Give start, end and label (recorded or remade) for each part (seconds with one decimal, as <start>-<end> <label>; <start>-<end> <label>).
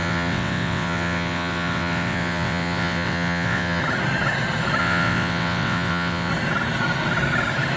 0.0-3.8 remade; 3.8-4.8 recorded; 4.8-6.3 remade; 6.3-7.8 recorded